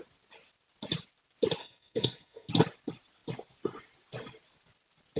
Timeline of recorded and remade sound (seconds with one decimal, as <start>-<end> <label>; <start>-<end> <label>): 0.0-1.6 recorded; 1.6-2.5 remade; 2.5-5.2 recorded